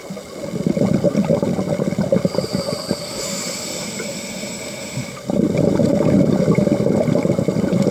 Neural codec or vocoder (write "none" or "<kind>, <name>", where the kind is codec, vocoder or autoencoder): none